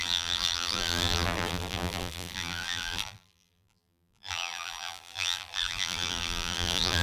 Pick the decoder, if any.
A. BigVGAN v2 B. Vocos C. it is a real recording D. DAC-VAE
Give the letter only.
A